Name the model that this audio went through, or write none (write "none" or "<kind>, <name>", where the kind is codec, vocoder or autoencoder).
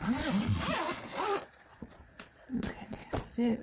vocoder, Vocos